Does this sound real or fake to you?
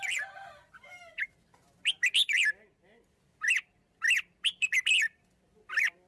real